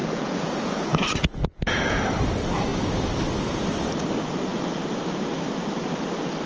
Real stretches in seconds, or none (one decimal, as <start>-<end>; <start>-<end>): 1.9-6.5